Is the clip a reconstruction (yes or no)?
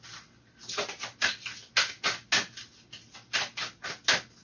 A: no